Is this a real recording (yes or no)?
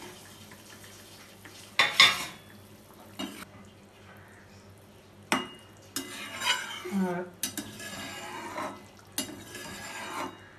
yes